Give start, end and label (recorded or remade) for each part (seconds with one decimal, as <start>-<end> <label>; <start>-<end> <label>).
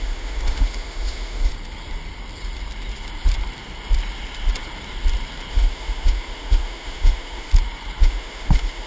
0.0-1.5 remade; 1.5-5.5 recorded; 5.5-7.5 remade; 7.5-8.0 recorded; 8.0-8.9 remade